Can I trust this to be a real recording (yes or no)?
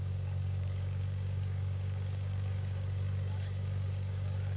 no